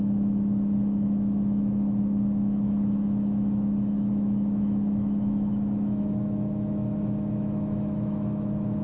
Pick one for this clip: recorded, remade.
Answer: remade